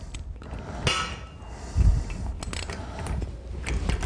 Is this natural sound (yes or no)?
yes